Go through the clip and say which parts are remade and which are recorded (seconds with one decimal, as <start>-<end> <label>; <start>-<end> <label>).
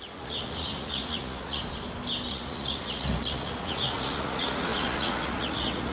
0.0-1.6 remade; 1.6-2.3 recorded; 2.3-5.9 remade